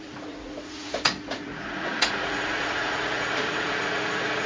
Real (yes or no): no